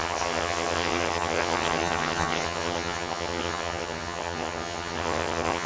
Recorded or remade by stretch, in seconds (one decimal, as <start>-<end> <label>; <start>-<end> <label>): 0.0-5.7 remade